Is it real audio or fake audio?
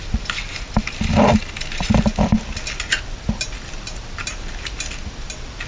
real